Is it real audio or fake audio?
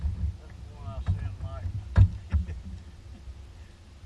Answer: real